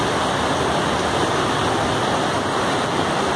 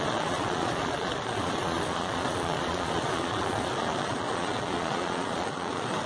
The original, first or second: first